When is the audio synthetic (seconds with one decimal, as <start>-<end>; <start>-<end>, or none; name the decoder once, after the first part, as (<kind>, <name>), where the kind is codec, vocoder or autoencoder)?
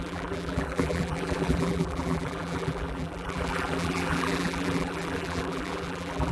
0.0-6.3 (vocoder, BigVGAN v2)